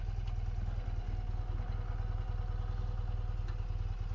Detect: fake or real real